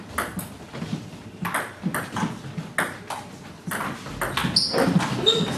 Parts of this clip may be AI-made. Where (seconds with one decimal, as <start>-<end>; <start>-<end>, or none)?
none